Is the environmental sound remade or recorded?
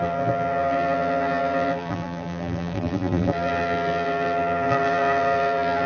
remade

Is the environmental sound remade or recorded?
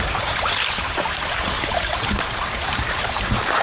remade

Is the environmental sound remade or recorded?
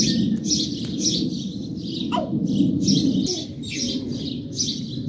remade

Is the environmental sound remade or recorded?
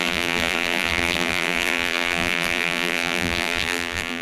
remade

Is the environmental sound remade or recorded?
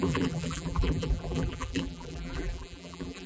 remade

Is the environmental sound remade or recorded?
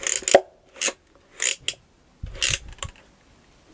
recorded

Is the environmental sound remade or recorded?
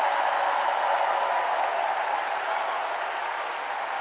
recorded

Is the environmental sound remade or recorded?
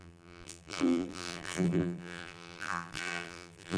remade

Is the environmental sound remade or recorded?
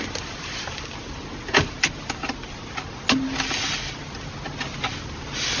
recorded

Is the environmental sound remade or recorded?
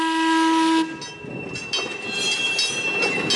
recorded